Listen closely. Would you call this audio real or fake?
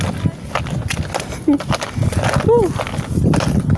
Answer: real